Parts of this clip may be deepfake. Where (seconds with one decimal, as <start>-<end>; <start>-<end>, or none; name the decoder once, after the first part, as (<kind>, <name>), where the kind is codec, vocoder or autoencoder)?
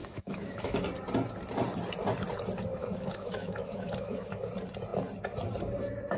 0.0-0.8 (autoencoder, DAC-VAE); 2.8-4.5